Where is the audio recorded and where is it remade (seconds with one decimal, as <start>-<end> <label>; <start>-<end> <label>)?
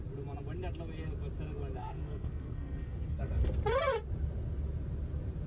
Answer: 0.0-1.8 recorded; 1.8-3.5 remade; 3.5-5.5 recorded